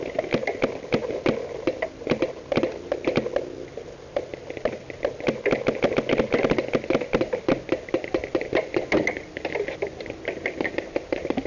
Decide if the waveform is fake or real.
real